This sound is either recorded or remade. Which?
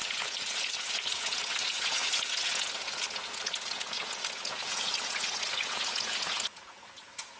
remade